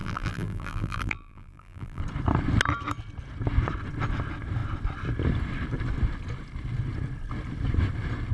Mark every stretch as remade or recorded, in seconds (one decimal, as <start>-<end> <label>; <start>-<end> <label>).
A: 0.0-2.0 remade; 2.0-8.3 recorded